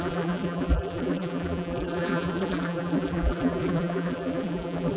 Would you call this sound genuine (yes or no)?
no